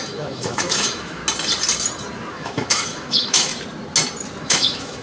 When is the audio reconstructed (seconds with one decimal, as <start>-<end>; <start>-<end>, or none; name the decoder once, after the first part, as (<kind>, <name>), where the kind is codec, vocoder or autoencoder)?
0.0-1.2 (autoencoder, DAC-VAE); 2.3-3.5; 4.4-5.0